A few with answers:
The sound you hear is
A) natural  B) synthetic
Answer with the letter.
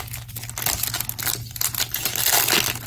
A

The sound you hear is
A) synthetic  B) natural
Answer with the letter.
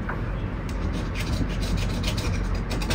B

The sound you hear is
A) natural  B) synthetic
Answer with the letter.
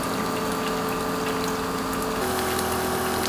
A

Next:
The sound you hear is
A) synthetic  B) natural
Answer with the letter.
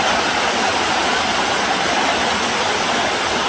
B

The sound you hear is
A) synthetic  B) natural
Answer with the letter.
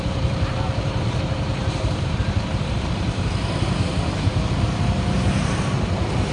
A